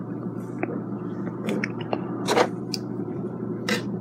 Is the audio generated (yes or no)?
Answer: yes